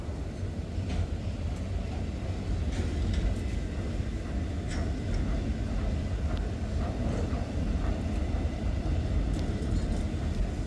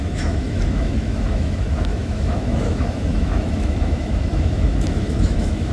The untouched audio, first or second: first